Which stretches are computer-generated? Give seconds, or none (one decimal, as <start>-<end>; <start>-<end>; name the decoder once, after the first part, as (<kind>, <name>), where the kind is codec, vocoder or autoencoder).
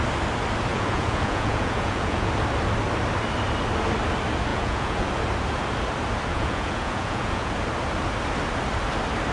0.7-2.3 (vocoder, Vocos); 4.5-5.1; 6.3-7.5